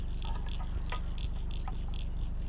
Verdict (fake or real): real